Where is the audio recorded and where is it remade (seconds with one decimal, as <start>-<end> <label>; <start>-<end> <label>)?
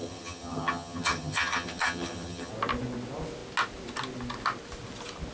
0.0-2.5 remade; 2.5-5.3 recorded